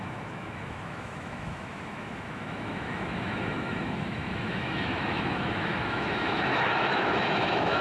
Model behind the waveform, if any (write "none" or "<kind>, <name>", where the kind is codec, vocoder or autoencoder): autoencoder, DAC-VAE